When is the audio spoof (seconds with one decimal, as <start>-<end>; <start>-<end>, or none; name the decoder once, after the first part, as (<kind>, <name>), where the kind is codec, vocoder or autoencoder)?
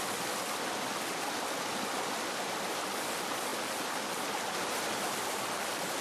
none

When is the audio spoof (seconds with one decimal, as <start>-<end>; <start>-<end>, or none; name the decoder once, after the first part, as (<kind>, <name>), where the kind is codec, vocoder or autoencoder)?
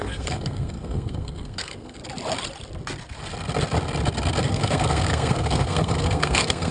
0.0-2.0 (codec, SNAC); 4.4-6.7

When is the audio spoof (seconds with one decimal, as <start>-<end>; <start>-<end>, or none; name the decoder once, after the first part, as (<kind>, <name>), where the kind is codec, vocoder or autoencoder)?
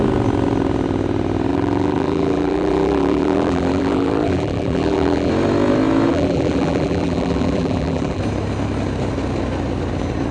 1.5-5.3 (vocoder, BigVGAN v2); 6.1-8.2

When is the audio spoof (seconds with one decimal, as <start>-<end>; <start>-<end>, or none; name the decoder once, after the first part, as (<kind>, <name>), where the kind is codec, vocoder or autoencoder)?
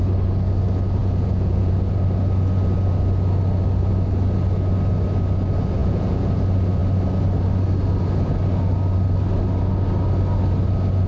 1.0-1.7 (vocoder, Vocos); 5.8-6.3